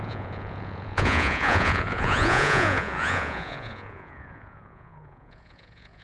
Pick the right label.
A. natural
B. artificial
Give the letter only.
B